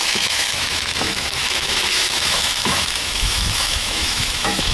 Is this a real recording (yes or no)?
no